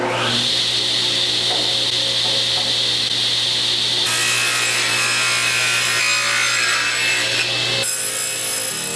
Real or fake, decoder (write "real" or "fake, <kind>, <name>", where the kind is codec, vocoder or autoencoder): real